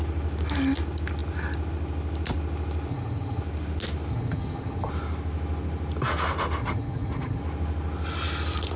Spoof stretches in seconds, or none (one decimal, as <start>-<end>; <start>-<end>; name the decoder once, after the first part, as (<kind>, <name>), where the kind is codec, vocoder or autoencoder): 2.9-3.4 (vocoder, HiFi-GAN); 4.1-4.9; 6.6-7.4

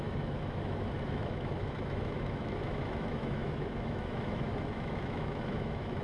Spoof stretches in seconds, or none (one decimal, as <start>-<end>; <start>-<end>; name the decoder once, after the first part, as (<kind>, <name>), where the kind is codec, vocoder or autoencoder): 0.0-6.0 (autoencoder, DAC-VAE)

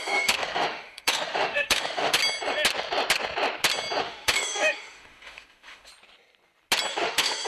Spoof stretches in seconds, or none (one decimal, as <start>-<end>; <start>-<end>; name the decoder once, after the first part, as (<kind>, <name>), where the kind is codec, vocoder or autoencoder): 0.0-2.2 (autoencoder, DAC-VAE); 4.0-5.9; 6.9-7.5

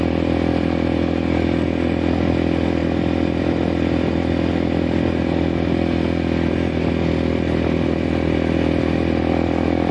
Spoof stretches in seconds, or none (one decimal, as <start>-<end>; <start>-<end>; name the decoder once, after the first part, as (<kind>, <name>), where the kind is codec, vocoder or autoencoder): none

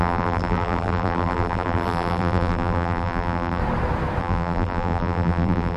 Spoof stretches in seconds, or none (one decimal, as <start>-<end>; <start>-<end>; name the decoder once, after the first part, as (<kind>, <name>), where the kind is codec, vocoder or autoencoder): 0.0-3.6 (vocoder, BigVGAN v2); 4.2-5.8

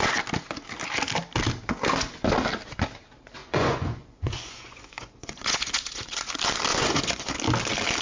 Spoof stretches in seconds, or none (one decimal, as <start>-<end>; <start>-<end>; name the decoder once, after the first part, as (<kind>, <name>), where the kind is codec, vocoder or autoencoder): 3.4-6.3 (vocoder, Vocos); 6.7-7.3

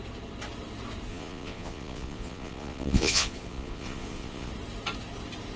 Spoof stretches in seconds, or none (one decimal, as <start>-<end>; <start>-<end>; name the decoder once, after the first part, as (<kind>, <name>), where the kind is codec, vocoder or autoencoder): 1.1-4.5 (vocoder, Vocos)